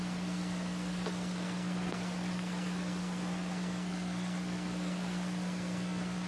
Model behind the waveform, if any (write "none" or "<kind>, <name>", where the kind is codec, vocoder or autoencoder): codec, SNAC